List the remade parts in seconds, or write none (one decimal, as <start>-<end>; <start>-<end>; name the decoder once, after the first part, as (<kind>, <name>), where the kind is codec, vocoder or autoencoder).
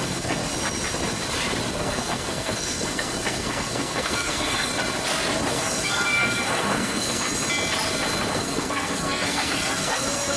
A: 0.0-0.4 (codec, SNAC); 1.8-4.7; 5.5-7.3; 8.3-10.4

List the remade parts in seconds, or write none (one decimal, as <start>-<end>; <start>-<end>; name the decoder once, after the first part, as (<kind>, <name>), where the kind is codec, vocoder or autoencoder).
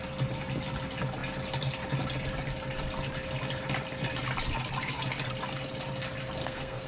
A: 6.4-6.9 (codec, SNAC)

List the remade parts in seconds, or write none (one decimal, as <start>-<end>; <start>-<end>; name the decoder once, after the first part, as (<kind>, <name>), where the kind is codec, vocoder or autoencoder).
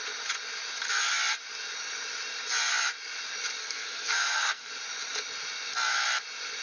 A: 3.6-4.7 (codec, SNAC)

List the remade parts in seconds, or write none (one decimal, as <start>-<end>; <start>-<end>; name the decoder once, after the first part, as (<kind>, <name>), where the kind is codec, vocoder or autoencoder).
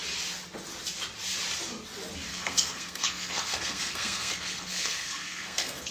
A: 2.3-5.9 (codec, SNAC)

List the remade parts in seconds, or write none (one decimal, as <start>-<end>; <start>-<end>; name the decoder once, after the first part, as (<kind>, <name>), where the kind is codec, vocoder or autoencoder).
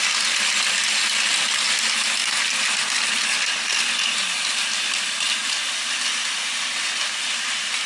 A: none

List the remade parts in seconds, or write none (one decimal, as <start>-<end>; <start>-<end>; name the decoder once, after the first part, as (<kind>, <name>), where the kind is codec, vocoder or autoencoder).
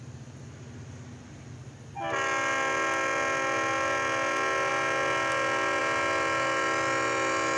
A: none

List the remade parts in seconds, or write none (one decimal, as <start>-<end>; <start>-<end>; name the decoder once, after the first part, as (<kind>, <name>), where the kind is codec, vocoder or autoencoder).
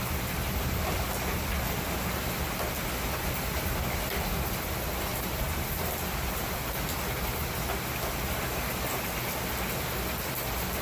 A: none